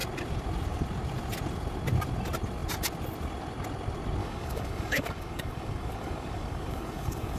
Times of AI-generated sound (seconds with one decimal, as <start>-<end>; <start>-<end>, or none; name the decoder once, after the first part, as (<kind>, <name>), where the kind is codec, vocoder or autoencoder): 4.2-7.4 (codec, DAC)